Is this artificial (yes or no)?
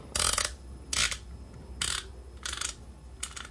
no